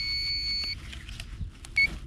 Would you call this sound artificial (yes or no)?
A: no